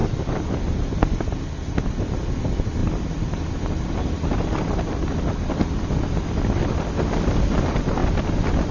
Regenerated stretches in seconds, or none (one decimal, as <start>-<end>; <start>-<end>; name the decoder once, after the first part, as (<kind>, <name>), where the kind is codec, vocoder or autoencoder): none